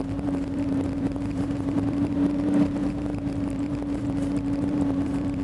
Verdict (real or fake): fake